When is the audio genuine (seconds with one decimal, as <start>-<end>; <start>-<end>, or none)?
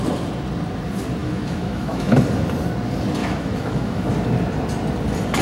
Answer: 0.0-1.2; 2.2-3.2; 4.1-5.4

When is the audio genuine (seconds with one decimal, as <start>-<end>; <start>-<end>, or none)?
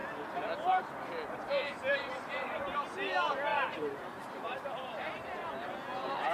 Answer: 0.0-1.9; 2.5-3.5; 5.5-6.3